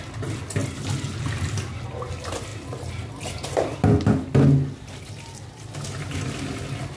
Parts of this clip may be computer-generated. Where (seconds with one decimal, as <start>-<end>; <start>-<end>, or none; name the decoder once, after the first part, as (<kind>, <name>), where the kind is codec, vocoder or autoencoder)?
none